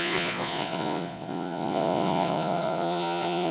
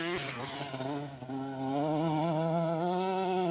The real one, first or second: second